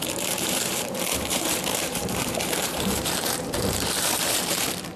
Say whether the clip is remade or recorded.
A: remade